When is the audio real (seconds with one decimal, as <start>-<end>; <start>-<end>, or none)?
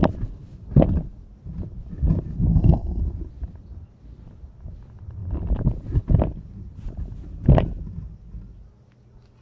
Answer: 0.0-2.5; 3.0-9.4